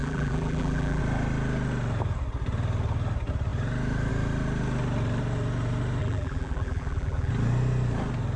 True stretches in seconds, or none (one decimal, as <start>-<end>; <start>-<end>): 1.0-6.0; 7.3-8.4

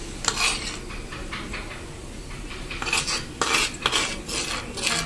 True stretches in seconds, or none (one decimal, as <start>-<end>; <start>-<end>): 0.0-1.1; 4.2-5.1

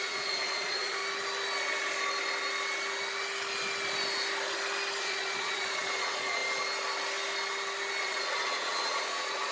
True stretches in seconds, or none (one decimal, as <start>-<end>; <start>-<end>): 1.0-5.0; 6.4-8.0

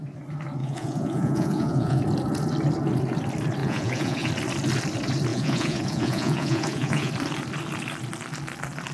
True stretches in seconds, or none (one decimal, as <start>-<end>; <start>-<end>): 0.0-0.6; 2.0-3.6; 4.3-5.3; 7.1-8.9